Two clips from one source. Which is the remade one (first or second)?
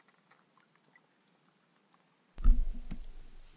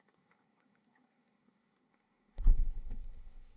second